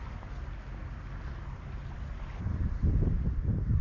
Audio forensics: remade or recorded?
recorded